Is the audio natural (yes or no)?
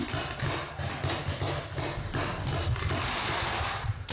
yes